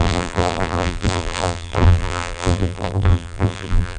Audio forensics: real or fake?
fake